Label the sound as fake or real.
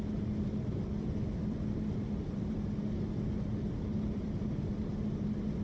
real